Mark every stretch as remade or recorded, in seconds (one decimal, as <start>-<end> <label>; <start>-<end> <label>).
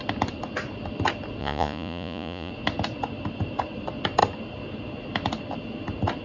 0.0-1.4 recorded; 1.4-2.5 remade; 2.5-6.2 recorded